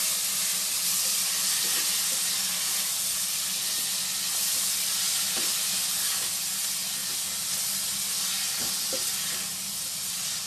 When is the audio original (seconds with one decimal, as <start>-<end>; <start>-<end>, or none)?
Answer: 0.0-10.5